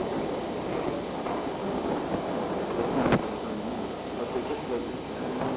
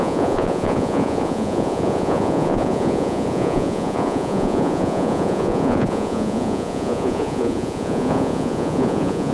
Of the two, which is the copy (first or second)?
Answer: second